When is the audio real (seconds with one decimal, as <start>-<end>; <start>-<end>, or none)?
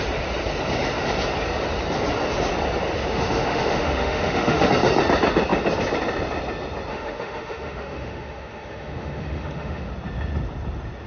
0.0-3.1; 4.7-6.9; 9.9-11.1